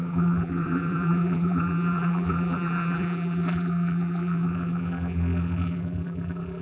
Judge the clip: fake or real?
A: fake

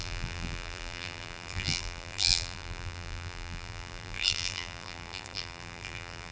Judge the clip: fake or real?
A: fake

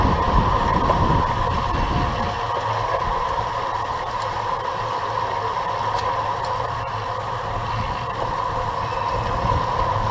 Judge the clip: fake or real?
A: real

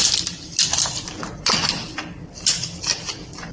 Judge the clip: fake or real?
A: fake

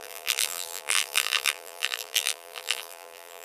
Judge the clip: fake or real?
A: fake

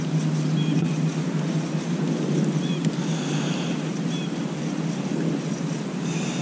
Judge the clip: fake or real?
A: real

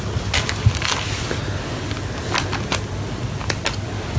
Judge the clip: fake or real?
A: real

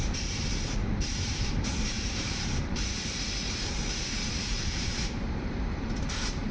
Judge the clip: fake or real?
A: fake